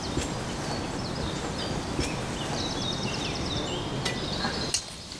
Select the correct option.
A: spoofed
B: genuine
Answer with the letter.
B